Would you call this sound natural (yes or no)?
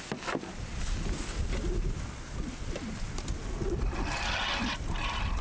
yes